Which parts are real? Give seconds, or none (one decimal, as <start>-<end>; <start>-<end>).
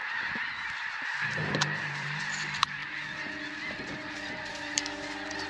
2.8-4.5